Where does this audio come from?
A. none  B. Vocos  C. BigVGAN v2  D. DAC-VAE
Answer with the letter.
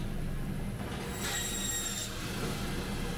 A